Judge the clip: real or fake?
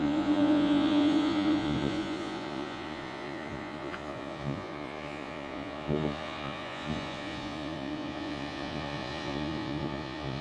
fake